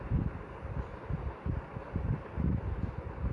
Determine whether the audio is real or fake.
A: real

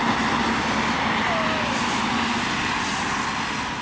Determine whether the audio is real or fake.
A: real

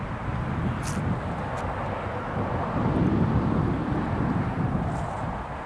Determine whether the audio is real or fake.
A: real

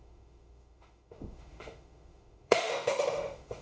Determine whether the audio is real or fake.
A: fake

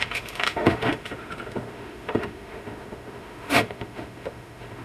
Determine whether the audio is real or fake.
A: fake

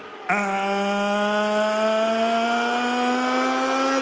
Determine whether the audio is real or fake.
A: real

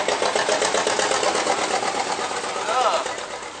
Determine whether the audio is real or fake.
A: real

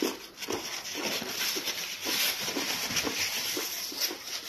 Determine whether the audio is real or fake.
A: real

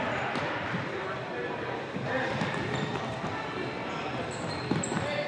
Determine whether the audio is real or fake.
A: real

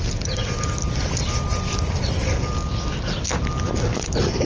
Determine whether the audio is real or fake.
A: real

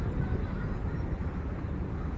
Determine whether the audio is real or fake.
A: real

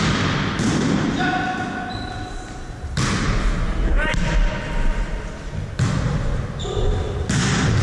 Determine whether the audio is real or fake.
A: real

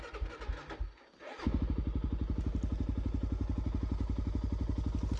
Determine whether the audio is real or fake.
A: real